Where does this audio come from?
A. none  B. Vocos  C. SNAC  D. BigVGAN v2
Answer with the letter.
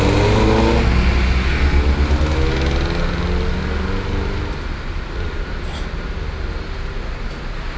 A